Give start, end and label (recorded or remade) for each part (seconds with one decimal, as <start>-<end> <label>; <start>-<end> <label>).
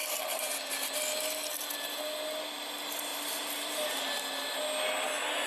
0.0-0.7 remade; 0.7-3.1 recorded; 3.1-3.7 remade; 3.7-5.5 recorded